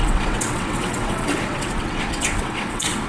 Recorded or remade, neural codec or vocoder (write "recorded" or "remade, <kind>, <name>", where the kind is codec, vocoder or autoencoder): remade, vocoder, WaveNeXt